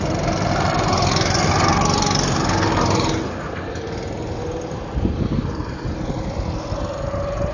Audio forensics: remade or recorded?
recorded